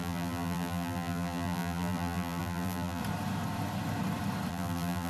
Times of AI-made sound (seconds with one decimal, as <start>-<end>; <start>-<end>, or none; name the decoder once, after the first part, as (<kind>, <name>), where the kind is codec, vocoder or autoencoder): 0.0-3.0 (vocoder, BigVGAN v2); 4.5-5.1